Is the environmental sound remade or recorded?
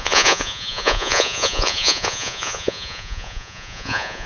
remade